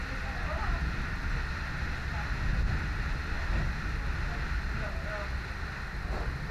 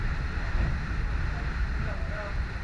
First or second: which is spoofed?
second